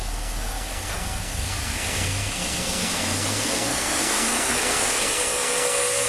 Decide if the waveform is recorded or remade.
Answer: remade